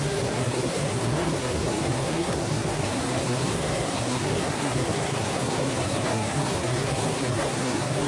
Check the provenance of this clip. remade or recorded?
remade